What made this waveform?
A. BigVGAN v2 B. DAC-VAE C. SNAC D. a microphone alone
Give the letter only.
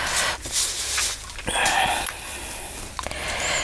D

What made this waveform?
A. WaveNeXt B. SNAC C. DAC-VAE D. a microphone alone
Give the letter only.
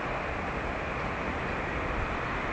D